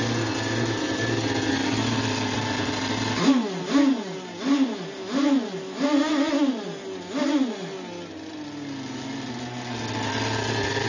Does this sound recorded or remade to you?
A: recorded